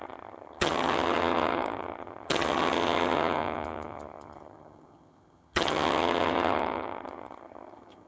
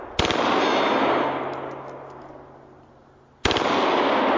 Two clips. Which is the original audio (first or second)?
second